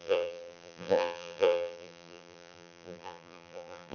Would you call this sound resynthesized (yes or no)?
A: yes